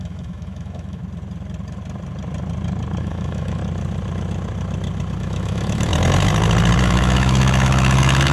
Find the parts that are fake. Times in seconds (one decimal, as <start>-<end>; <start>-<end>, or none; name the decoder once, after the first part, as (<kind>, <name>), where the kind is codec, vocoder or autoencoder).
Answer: 0.0-1.0 (autoencoder, DAC-VAE); 3.0-3.6; 5.2-5.9; 6.8-8.3